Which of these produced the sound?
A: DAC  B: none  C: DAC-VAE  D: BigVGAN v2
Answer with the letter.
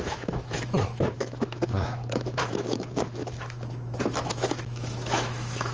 C